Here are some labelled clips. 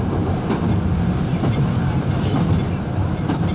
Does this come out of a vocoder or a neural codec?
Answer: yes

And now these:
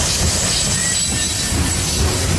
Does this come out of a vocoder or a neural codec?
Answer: no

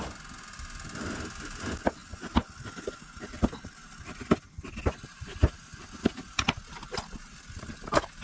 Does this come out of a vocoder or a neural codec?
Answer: no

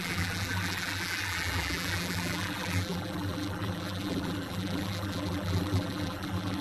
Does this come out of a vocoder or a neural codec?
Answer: yes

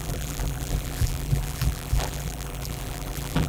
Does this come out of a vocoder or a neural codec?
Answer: yes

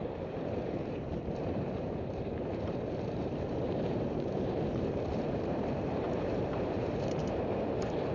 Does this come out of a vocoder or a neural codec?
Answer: yes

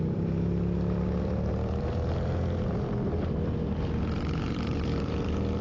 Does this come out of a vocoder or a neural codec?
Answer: yes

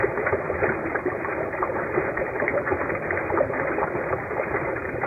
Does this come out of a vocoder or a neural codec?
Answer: no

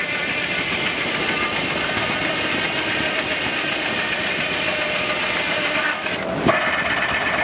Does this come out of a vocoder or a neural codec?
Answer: yes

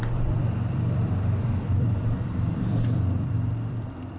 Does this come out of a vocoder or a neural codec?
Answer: yes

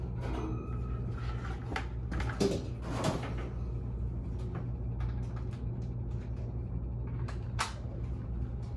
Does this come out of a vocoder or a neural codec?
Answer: no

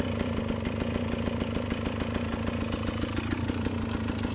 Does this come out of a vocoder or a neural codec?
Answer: no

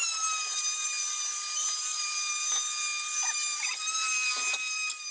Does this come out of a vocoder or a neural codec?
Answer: yes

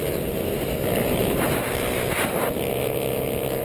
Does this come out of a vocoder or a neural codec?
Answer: no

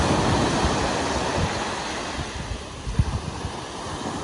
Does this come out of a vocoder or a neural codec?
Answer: no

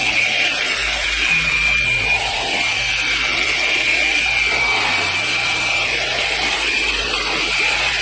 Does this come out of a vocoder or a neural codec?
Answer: yes